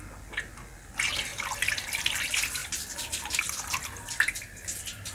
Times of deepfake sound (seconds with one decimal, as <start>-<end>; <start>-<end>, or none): 1.3-2.2; 2.6-4.3